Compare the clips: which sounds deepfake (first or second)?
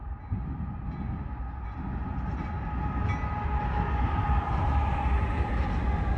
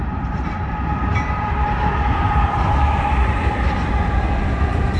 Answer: second